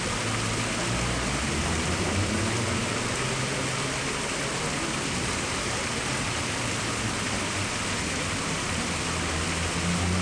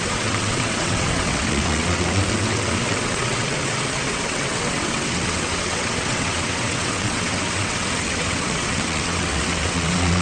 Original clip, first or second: first